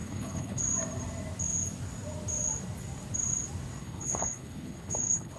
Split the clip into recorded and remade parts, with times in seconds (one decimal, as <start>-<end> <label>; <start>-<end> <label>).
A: 0.0-0.6 remade; 0.6-3.8 recorded; 3.8-5.4 remade